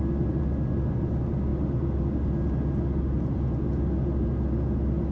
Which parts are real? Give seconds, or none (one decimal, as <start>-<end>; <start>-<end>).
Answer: 0.0-5.1